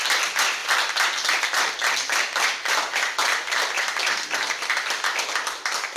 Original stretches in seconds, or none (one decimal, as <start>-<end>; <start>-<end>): 0.0-6.0